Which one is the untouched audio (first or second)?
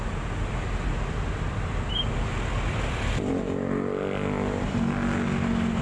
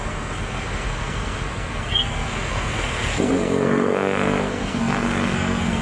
first